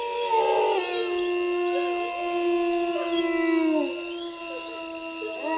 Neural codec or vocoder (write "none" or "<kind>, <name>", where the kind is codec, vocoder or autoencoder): none